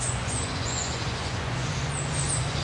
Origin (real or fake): fake